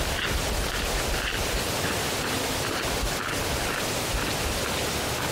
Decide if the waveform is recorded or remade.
recorded